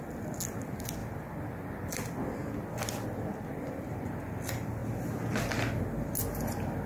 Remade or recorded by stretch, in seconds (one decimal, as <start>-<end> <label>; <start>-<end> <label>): 0.0-6.9 recorded